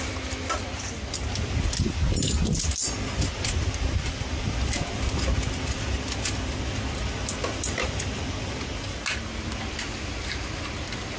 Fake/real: real